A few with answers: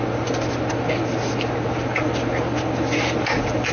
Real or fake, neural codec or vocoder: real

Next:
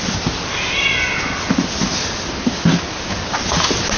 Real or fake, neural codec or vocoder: real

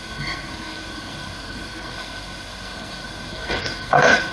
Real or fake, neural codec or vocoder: fake, codec, SNAC